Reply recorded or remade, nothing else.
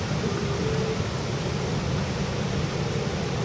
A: recorded